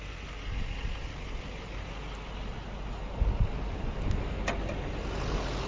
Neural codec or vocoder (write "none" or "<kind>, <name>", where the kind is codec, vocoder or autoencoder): none